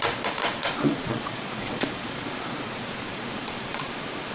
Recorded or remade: remade